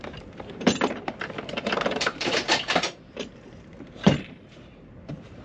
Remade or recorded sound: remade